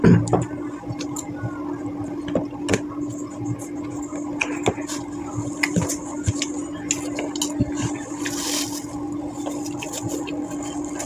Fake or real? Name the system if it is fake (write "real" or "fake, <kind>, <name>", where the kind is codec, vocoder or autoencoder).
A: real